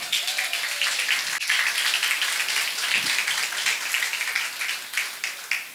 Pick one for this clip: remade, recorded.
recorded